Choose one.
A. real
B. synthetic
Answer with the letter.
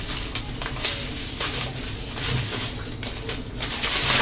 A